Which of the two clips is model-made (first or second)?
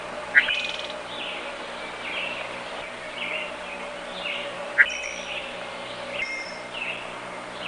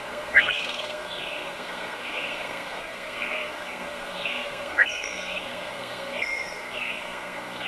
second